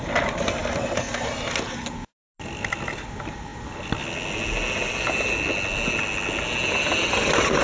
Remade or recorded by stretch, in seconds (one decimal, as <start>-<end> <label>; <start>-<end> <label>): 0.0-7.6 recorded